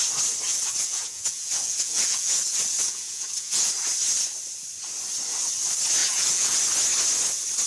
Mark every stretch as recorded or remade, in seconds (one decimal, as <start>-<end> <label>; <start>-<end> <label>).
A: 0.0-0.5 recorded; 0.5-3.7 remade; 3.7-6.0 recorded; 6.0-6.6 remade; 6.6-7.7 recorded

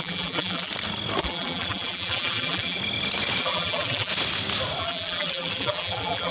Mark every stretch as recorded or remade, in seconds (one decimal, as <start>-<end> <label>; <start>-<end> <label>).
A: 0.0-0.7 remade; 0.7-1.2 recorded; 1.2-2.8 remade; 2.8-3.4 recorded; 3.4-4.1 remade; 4.1-4.8 recorded; 4.8-6.3 remade

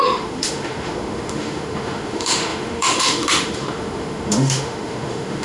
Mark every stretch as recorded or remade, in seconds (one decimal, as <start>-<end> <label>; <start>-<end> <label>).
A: 0.0-5.4 remade